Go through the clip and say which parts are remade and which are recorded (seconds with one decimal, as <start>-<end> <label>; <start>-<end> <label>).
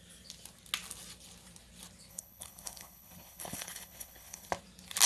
0.0-2.1 recorded; 2.1-4.5 remade; 4.5-5.1 recorded